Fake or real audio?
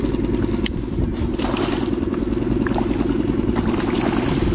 real